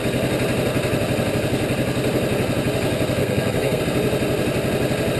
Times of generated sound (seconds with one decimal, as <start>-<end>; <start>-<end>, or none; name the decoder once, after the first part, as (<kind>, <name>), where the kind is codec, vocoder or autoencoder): 3.2-3.8 (codec, SNAC)